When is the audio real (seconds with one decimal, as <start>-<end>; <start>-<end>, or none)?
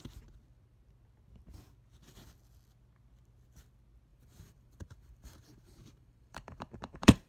0.0-4.1